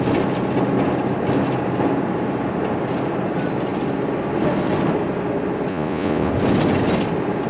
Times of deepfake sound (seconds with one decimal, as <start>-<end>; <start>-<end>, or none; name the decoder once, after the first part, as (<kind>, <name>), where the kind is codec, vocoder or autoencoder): 5.7-6.3 (vocoder, Vocos)

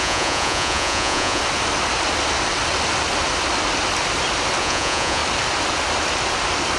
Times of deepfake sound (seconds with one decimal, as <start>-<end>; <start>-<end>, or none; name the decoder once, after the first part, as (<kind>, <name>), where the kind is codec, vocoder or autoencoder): 0.0-1.4 (vocoder, Vocos); 4.6-5.2

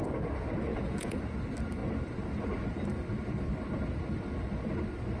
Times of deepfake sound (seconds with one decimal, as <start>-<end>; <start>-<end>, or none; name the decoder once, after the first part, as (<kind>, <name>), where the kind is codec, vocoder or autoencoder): 0.7-1.2 (vocoder, Vocos)

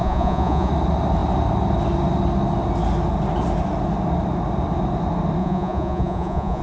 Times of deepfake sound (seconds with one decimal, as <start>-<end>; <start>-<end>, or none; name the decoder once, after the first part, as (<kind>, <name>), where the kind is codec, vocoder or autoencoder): 0.0-0.7 (vocoder, Vocos); 5.4-6.6

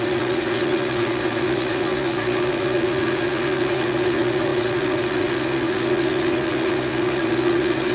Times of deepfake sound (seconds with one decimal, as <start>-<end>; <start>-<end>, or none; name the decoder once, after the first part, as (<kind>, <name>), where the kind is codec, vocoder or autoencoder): 0.0-7.9 (vocoder, Vocos)